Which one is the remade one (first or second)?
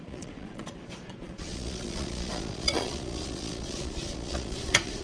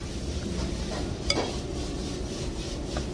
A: first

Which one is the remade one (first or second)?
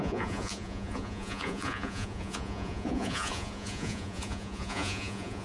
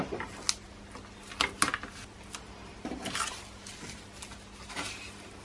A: first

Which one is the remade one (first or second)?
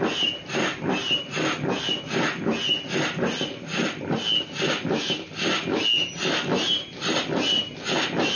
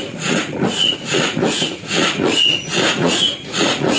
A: second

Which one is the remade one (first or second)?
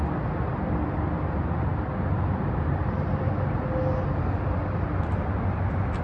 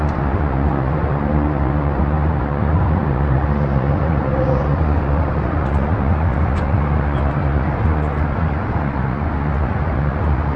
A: second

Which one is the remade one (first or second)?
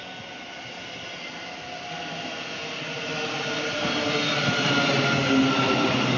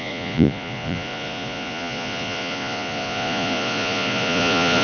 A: second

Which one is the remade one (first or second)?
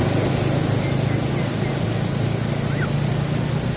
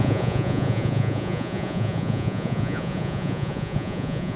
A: second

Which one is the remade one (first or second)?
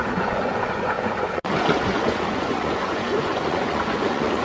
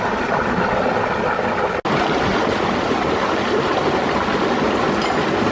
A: first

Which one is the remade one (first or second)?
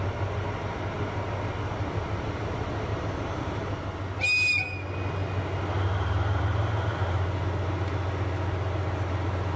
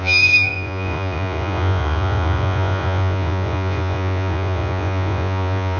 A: second